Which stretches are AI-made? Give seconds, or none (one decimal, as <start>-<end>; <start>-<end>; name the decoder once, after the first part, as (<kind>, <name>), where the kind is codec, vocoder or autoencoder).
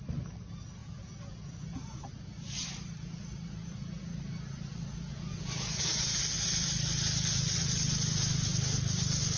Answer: 0.8-2.3 (vocoder, Vocos); 5.1-6.2